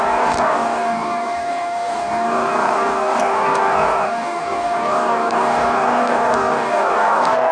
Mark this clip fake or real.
fake